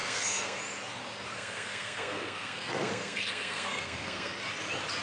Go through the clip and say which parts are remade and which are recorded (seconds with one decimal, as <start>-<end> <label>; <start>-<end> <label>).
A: 0.0-0.6 remade; 0.6-1.3 recorded; 1.3-4.3 remade; 4.3-5.0 recorded